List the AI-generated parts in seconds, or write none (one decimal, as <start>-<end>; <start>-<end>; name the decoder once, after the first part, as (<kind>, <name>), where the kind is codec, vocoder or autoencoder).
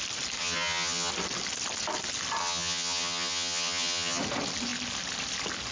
0.4-1.1 (vocoder, HiFi-GAN); 2.4-4.2